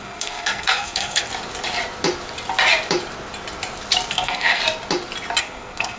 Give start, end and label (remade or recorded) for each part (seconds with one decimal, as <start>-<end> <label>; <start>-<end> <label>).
0.0-1.3 remade; 1.3-4.1 recorded; 4.1-4.6 remade; 4.6-5.4 recorded; 5.4-6.0 remade